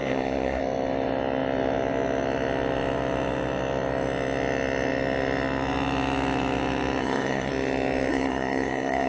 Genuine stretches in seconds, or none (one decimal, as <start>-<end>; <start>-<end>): 0.6-7.0; 7.5-8.1